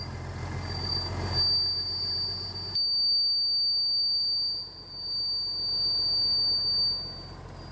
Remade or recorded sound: recorded